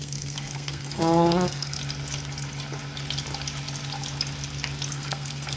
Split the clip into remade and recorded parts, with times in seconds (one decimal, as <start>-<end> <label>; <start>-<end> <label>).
0.0-1.8 remade; 1.8-4.9 recorded; 4.9-5.6 remade